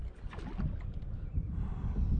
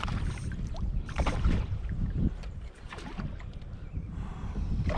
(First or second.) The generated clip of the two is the second